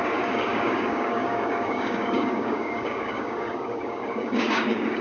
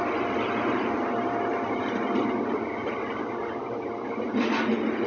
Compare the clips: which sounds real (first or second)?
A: second